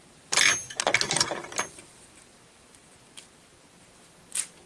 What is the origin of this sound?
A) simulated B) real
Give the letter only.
B